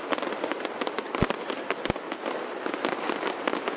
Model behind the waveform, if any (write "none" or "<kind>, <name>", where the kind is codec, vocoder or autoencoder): none